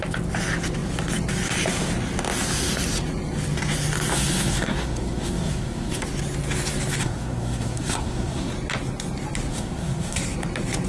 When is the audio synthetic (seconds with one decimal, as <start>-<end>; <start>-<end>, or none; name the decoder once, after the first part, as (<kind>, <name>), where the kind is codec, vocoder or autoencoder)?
4.1-6.0 (codec, SNAC); 7.0-8.5; 9.5-10.2